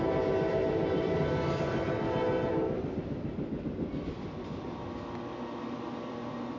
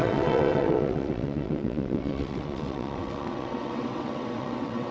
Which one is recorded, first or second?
first